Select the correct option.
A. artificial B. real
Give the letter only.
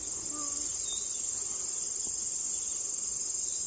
B